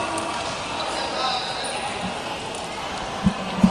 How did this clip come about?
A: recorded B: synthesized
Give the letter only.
A